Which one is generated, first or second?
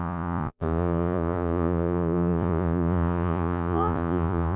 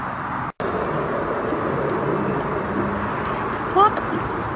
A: first